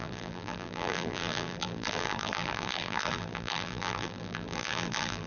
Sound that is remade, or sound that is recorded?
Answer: remade